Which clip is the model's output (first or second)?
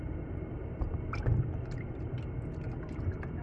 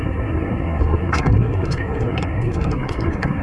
second